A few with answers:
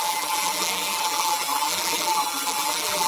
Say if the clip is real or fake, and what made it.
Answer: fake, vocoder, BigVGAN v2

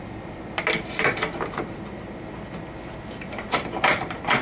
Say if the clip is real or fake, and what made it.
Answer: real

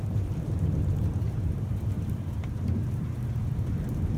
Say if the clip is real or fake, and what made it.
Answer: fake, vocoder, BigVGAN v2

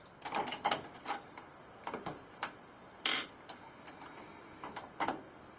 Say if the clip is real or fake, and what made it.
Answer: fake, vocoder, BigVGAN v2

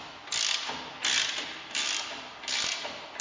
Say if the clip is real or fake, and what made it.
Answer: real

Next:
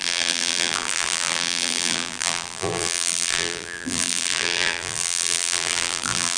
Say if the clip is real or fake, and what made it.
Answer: fake, vocoder, BigVGAN v2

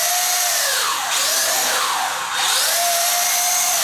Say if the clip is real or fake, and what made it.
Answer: real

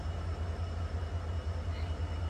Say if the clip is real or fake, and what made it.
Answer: real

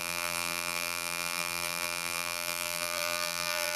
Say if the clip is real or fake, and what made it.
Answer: fake, vocoder, BigVGAN v2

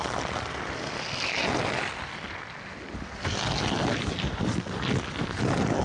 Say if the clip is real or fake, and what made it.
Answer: real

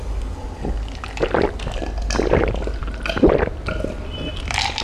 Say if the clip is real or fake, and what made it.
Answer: real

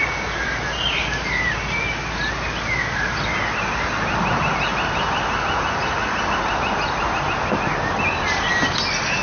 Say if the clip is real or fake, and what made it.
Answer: real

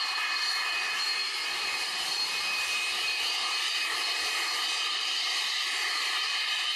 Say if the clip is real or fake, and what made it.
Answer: fake, vocoder, BigVGAN v2